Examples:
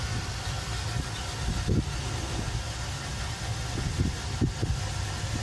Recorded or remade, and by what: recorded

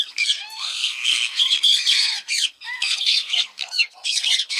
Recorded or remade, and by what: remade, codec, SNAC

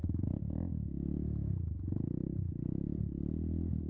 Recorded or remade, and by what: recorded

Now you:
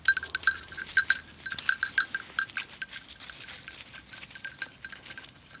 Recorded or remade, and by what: recorded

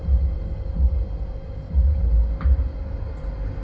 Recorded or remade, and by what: recorded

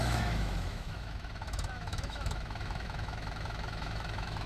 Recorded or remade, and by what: remade, autoencoder, DAC-VAE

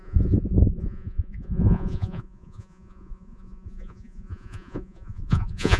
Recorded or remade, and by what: remade, vocoder, Vocos